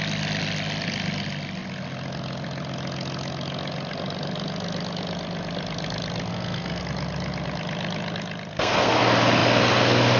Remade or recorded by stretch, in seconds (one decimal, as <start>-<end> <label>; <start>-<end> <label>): 0.0-6.3 recorded; 6.3-6.8 remade; 6.8-8.5 recorded; 8.5-9.0 remade; 9.0-10.2 recorded